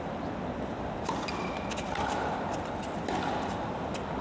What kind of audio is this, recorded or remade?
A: recorded